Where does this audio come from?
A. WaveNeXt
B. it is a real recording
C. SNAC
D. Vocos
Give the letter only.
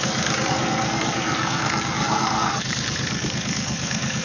C